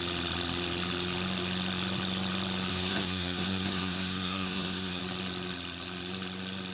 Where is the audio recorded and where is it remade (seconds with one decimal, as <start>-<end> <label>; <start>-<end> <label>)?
0.0-2.7 recorded; 2.7-5.0 remade; 5.0-6.7 recorded